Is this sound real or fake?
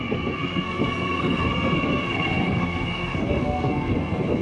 fake